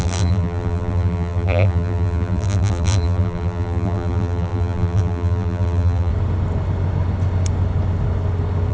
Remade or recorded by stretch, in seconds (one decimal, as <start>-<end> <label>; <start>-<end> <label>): 0.0-6.1 remade; 6.1-8.7 recorded